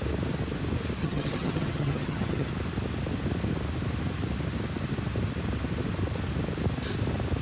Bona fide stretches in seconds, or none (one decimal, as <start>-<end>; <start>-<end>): 0.0-1.0; 2.5-7.4